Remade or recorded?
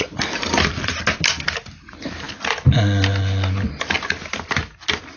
recorded